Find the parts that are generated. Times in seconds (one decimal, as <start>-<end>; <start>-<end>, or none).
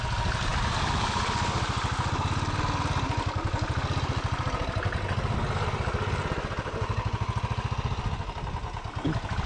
none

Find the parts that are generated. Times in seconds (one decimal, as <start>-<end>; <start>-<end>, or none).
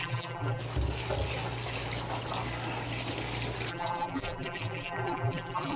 0.0-0.6; 3.7-5.8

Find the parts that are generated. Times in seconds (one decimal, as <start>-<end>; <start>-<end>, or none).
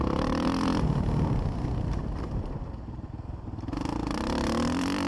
0.0-0.7; 2.2-3.7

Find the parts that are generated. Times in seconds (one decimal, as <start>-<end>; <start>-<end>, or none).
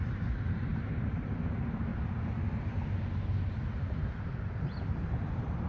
0.7-1.3